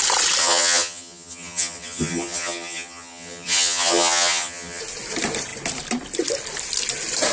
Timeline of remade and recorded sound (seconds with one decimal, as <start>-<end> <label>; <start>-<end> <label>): 0.0-0.4 recorded; 0.4-4.8 remade; 4.8-7.3 recorded